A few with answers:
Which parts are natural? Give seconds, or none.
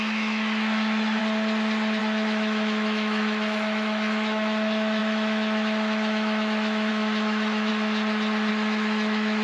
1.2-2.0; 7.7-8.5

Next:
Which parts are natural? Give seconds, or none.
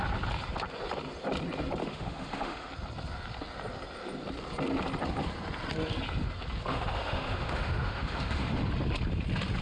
0.0-1.8; 2.7-6.7; 8.6-9.6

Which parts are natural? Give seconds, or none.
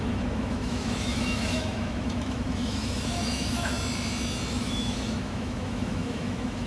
3.7-4.5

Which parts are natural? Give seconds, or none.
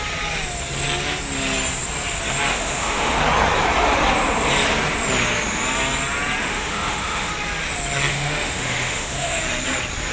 0.0-2.5; 3.2-6.4; 7.3-8.1; 9.4-10.1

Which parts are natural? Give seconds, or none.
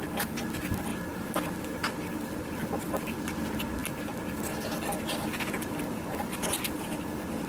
0.0-7.5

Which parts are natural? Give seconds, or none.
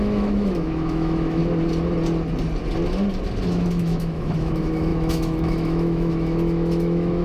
1.4-3.5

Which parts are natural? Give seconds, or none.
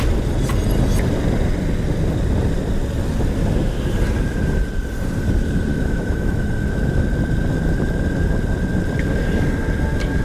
0.0-5.7; 7.0-10.2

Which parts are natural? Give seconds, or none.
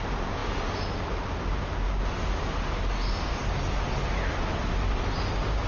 0.0-5.7